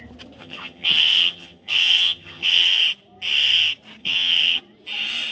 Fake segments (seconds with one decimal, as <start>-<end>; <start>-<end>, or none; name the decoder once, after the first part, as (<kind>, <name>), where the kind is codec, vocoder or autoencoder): 0.4-2.8 (vocoder, HiFi-GAN); 4.0-4.6